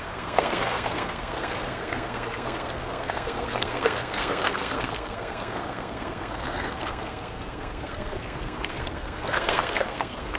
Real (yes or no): no